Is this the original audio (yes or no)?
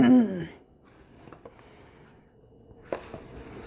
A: yes